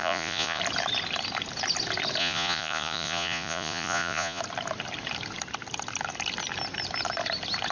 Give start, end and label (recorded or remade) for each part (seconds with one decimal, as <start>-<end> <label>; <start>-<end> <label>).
0.0-0.6 remade; 0.6-2.2 recorded; 2.2-4.4 remade; 4.4-7.7 recorded